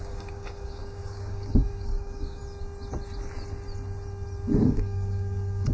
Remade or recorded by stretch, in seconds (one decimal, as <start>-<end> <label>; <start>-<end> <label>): 0.0-2.4 remade; 2.4-4.6 recorded; 4.6-5.7 remade